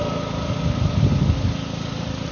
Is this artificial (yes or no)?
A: no